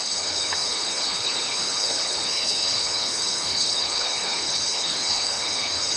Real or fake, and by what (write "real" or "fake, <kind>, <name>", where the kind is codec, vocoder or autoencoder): fake, codec, HILCodec